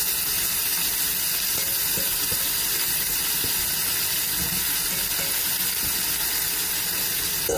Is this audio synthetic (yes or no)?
no